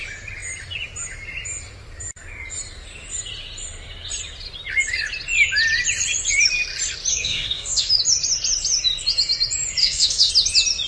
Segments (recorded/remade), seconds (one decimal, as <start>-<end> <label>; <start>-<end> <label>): 0.0-7.1 recorded; 7.1-7.9 remade; 7.9-9.8 recorded; 9.8-10.3 remade; 10.3-10.9 recorded